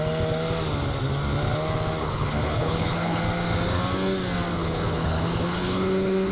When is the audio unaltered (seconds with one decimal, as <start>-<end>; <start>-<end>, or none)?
0.0-2.0; 3.2-4.5